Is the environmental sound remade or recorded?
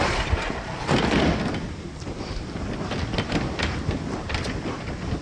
recorded